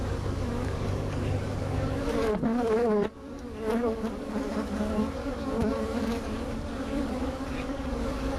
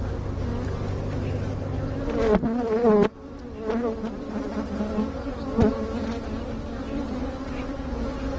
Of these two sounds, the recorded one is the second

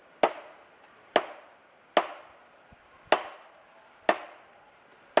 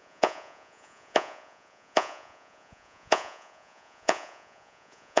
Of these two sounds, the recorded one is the first